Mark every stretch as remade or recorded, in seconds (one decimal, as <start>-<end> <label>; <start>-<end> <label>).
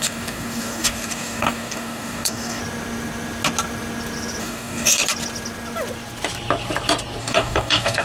0.0-2.6 remade; 2.6-4.4 recorded; 4.4-5.0 remade; 5.0-7.2 recorded; 7.2-8.0 remade